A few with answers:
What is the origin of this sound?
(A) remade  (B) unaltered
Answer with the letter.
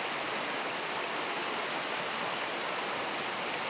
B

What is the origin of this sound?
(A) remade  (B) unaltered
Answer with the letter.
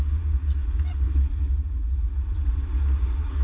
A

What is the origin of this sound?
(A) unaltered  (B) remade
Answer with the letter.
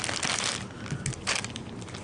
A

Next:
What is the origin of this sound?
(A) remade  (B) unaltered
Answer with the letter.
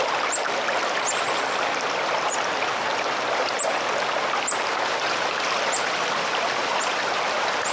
B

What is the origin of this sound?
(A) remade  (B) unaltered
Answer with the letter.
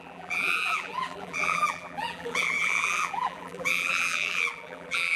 A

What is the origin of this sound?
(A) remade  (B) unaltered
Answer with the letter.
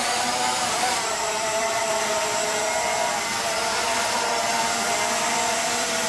A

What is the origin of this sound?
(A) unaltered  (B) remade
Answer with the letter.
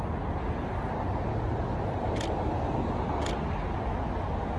A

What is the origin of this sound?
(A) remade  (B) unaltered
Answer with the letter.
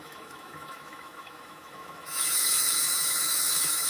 A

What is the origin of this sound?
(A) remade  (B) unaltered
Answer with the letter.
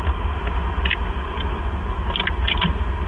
B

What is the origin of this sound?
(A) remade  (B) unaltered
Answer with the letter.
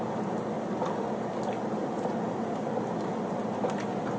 B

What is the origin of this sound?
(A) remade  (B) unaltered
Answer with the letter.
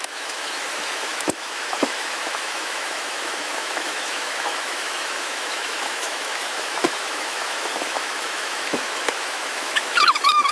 A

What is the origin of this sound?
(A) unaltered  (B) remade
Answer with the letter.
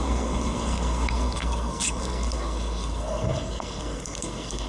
B